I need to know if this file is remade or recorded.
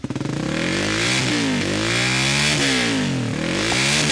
recorded